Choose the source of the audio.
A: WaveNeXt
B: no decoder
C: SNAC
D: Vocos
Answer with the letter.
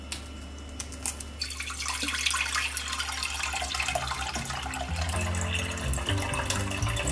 B